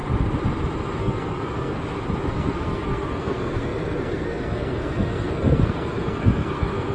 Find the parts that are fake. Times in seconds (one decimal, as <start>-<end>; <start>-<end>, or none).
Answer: 1.0-1.8; 2.3-6.9